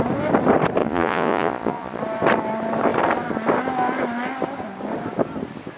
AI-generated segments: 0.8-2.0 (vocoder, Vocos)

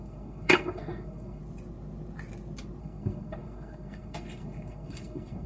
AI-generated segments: 0.0-1.4 (codec, SNAC); 2.8-5.5

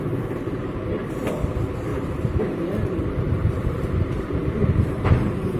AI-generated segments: 1.9-5.6 (vocoder, BigVGAN v2)